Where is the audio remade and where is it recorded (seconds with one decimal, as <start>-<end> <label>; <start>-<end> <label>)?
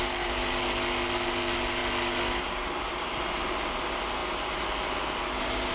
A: 0.0-1.8 recorded; 1.8-3.2 remade; 3.2-5.7 recorded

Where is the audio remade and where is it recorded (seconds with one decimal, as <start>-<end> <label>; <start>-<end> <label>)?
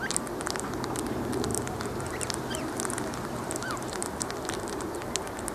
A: 0.0-1.5 recorded; 1.5-4.8 remade; 4.8-5.5 recorded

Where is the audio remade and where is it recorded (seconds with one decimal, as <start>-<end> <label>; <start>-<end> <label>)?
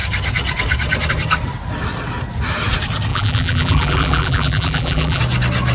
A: 0.0-3.1 recorded; 3.1-5.2 remade; 5.2-5.7 recorded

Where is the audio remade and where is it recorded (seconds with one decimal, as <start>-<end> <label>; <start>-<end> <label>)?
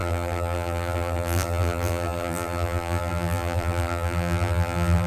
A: 0.0-5.1 remade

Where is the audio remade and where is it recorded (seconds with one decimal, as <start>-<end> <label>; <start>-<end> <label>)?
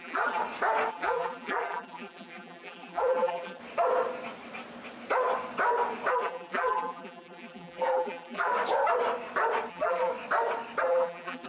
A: 0.0-0.4 remade; 0.4-0.9 recorded; 0.9-3.6 remade; 3.6-6.1 recorded; 6.1-8.5 remade; 8.5-9.7 recorded; 9.7-10.1 remade; 10.1-10.8 recorded; 10.8-11.5 remade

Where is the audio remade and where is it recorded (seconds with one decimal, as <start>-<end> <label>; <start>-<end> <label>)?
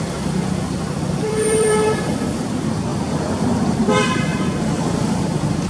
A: 0.0-2.9 remade; 2.9-3.7 recorded; 3.7-5.7 remade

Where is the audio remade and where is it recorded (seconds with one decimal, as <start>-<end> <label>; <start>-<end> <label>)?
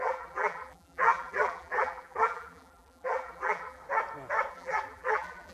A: 0.0-3.8 remade; 3.8-4.5 recorded; 4.5-5.5 remade